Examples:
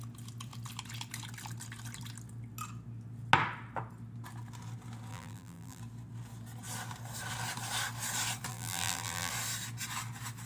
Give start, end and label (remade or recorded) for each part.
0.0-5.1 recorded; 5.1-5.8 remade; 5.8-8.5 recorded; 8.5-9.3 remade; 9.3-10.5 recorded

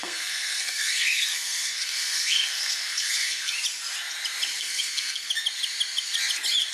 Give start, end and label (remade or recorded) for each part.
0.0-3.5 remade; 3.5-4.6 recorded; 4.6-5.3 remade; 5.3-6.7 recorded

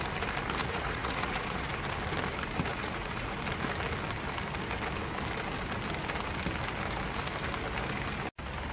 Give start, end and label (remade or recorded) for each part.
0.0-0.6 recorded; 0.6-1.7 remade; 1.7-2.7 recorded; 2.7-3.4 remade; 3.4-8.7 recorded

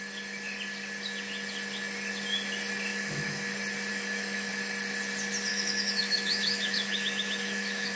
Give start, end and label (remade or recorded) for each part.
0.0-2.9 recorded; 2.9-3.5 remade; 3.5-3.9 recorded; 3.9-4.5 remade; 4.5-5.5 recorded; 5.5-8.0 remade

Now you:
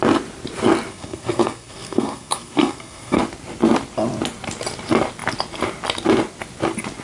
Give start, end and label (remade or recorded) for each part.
0.0-0.9 recorded; 0.9-3.2 remade; 3.2-7.0 recorded

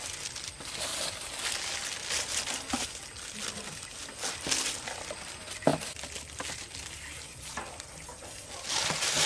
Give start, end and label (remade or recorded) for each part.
0.0-9.3 recorded

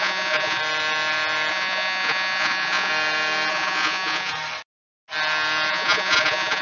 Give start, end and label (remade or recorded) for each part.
0.0-0.6 remade; 0.6-1.5 recorded; 1.5-2.9 remade; 2.9-3.5 recorded; 3.5-4.3 remade; 4.3-5.7 recorded; 5.7-6.6 remade